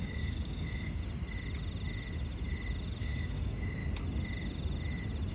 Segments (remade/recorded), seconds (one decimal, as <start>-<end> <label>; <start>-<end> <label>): 0.0-1.0 remade; 1.0-3.0 recorded; 3.0-3.8 remade; 3.8-5.3 recorded